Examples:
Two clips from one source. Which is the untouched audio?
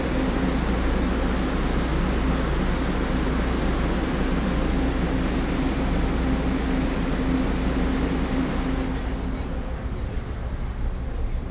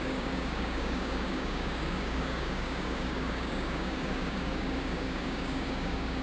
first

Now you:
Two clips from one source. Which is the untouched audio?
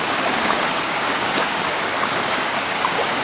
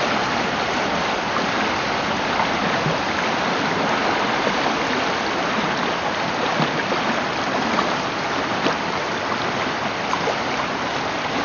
second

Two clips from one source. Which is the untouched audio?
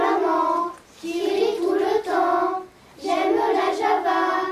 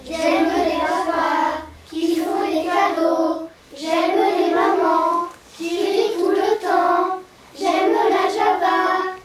first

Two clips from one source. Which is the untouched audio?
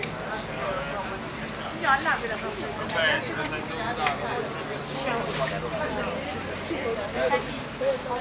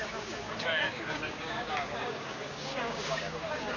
first